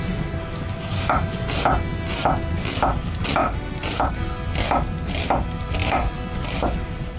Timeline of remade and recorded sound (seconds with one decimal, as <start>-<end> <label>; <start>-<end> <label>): 0.0-3.4 recorded; 3.4-4.1 remade; 4.1-5.8 recorded; 5.8-7.2 remade